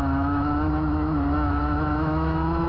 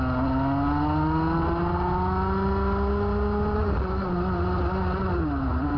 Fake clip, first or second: first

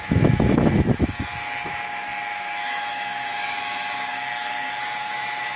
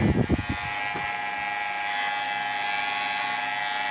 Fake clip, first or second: first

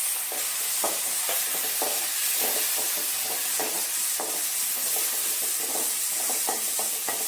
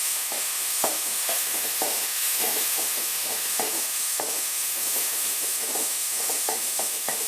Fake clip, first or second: second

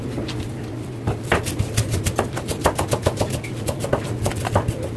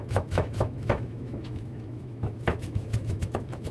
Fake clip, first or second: second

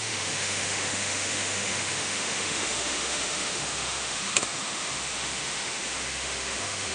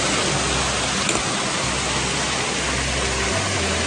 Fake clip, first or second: first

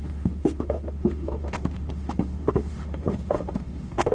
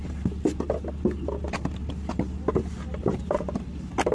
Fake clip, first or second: first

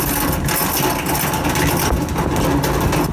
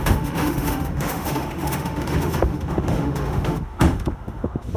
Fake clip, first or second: second